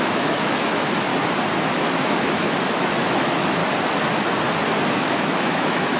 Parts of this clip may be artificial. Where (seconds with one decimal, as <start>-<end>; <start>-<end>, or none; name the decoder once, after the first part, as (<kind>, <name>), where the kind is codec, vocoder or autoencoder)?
0.0-1.1 (autoencoder, DAC-VAE); 1.6-3.6; 4.9-6.0